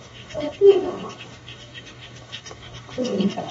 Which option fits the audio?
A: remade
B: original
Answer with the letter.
A